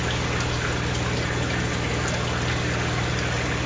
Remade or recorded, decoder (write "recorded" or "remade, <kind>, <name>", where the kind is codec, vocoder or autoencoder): recorded